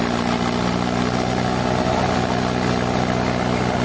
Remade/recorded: recorded